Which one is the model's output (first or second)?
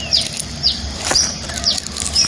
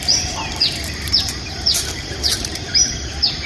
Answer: second